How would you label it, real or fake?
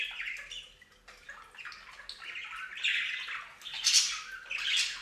real